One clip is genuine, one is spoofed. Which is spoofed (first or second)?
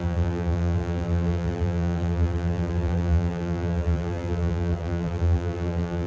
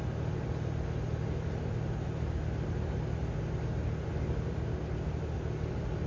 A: first